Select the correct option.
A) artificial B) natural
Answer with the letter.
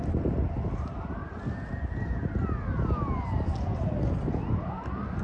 B